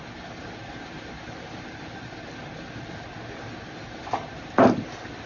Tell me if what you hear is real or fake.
real